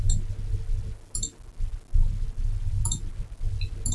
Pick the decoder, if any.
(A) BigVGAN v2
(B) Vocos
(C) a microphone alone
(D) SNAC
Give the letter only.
C